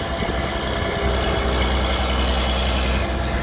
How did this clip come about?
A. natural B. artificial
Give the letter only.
A